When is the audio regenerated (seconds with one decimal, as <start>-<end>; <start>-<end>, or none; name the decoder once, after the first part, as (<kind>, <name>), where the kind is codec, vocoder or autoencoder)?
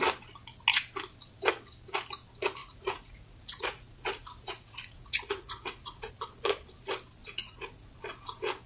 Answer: 2.6-6.1 (vocoder, Vocos); 7.2-7.9